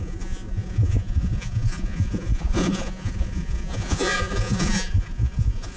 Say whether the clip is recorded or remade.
remade